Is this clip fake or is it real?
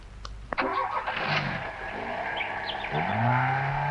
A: real